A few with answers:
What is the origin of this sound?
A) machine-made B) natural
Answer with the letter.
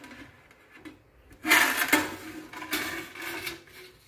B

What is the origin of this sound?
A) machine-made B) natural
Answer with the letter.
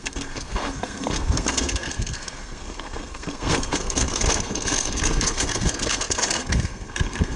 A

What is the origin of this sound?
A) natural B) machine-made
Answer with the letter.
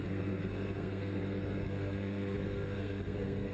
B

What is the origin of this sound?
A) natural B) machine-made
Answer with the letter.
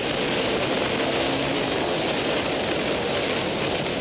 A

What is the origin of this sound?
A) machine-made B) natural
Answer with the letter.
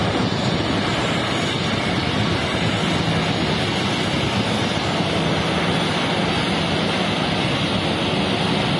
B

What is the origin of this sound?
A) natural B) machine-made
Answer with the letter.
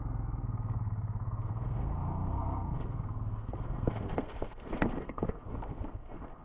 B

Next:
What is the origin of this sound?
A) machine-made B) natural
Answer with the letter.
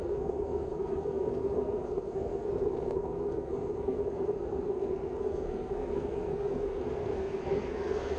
A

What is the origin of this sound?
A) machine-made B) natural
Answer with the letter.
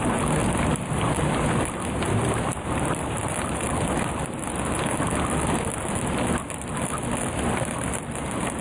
B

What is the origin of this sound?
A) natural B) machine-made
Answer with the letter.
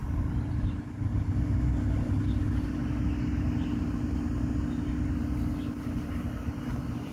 A